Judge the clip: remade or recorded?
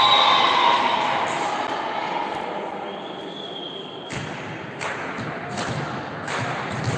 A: remade